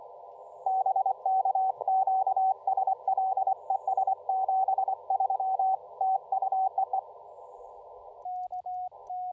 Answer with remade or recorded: recorded